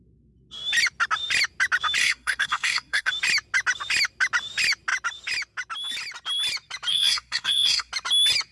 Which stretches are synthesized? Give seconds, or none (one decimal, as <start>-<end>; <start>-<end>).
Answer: 2.0-3.1; 6.9-7.9